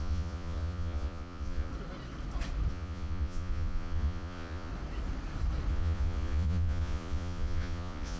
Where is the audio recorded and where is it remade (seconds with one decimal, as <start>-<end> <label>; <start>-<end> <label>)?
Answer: 0.0-1.7 remade; 1.7-2.7 recorded; 2.7-4.7 remade; 4.7-5.7 recorded; 5.7-8.2 remade